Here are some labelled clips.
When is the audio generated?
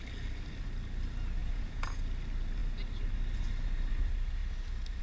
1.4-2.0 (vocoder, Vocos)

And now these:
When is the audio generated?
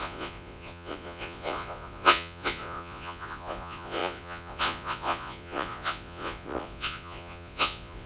0.0-8.1 (vocoder, Vocos)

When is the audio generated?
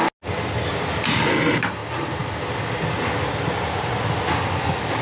none